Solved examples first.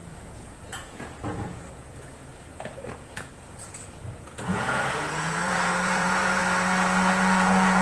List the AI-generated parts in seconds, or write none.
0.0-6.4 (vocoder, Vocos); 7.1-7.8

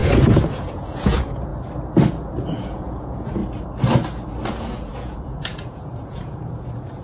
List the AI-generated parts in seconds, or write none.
0.0-1.5 (vocoder, Vocos); 2.1-3.4; 4.5-7.0

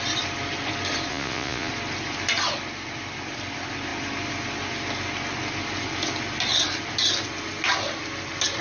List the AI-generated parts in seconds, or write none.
1.1-1.7 (vocoder, Vocos)

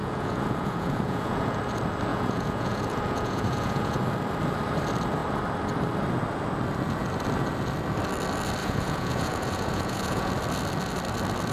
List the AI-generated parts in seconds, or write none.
0.0-1.6 (vocoder, Vocos); 2.1-4.0; 8.6-10.3

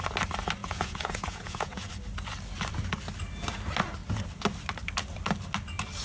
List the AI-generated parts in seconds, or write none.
0.6-1.9 (vocoder, Vocos)

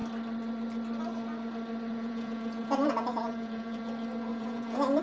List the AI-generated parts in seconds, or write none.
1.9-3.8 (vocoder, Vocos); 4.3-5.0